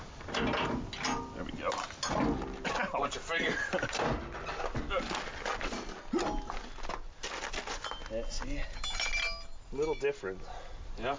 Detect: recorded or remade recorded